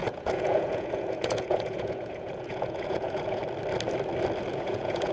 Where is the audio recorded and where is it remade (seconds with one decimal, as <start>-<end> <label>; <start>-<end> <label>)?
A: 0.0-3.4 remade; 3.4-4.5 recorded; 4.5-5.1 remade